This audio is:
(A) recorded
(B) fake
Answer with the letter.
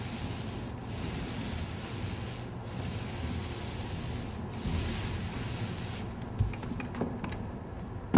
A